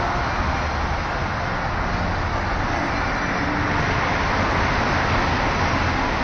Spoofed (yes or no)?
no